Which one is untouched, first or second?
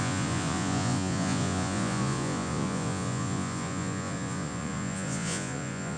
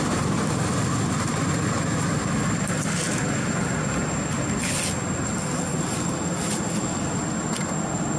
second